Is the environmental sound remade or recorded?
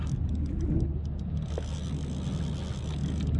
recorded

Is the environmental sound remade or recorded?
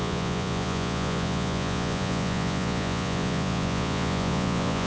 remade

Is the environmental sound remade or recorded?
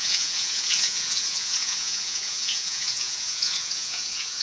remade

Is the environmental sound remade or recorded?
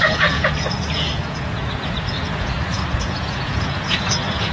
remade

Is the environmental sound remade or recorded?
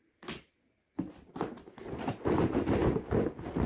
recorded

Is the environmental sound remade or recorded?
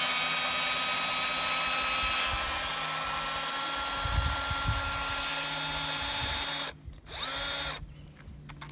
recorded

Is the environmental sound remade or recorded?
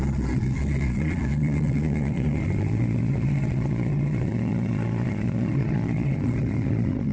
remade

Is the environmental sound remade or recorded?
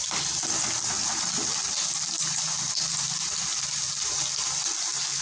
recorded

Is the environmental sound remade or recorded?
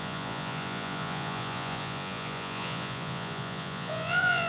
remade